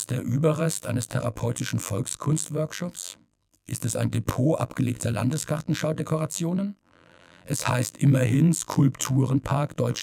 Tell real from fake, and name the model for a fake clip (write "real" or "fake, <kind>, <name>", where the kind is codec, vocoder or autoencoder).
fake, vocoder, BigVGAN v2